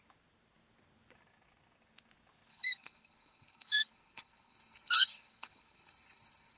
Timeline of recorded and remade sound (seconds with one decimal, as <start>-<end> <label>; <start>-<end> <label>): 0.0-2.5 recorded; 2.5-6.6 remade